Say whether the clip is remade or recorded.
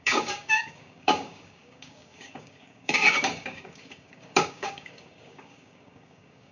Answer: remade